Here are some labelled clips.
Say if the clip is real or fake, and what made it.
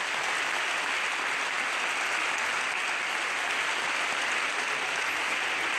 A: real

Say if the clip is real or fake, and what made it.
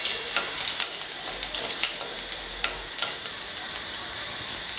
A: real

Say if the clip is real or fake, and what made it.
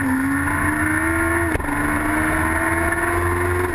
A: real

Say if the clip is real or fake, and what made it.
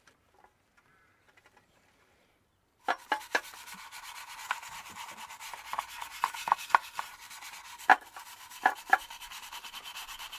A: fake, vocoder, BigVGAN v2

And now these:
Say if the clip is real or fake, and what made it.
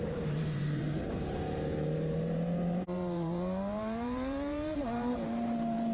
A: fake, vocoder, BigVGAN v2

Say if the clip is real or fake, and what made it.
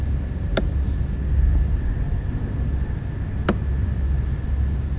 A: real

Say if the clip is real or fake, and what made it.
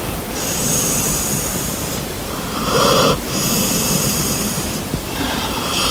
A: fake, vocoder, BigVGAN v2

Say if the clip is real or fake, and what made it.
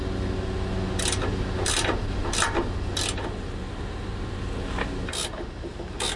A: real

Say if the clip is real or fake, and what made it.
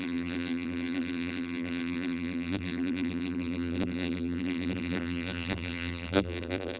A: fake, vocoder, BigVGAN v2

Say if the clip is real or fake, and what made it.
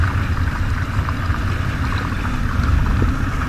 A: real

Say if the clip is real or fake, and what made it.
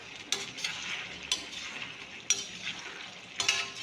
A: real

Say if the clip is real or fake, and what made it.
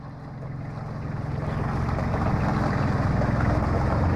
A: real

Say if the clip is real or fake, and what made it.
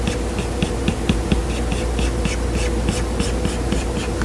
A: real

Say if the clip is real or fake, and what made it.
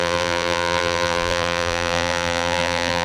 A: fake, vocoder, BigVGAN v2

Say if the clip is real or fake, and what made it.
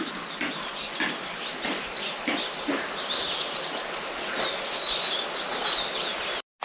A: real